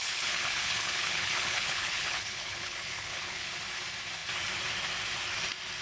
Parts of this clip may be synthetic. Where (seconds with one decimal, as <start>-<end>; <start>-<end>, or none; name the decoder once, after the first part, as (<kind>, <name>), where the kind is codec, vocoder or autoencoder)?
0.0-3.5 (codec, HILCodec)